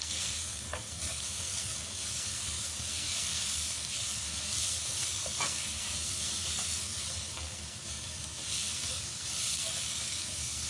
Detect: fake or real fake